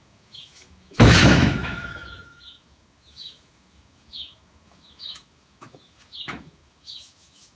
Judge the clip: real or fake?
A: fake